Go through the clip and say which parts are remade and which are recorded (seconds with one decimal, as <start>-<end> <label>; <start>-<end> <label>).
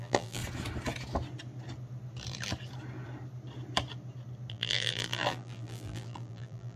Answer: 0.0-0.4 remade; 0.4-4.5 recorded; 4.5-6.8 remade